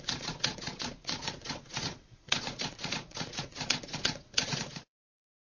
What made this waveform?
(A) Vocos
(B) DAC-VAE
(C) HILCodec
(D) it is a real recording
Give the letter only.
A